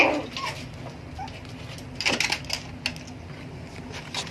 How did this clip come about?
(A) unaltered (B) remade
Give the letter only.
A